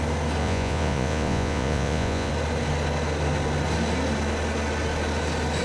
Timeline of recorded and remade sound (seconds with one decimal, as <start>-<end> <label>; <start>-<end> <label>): 0.0-0.4 recorded; 0.4-2.3 remade; 2.3-5.6 recorded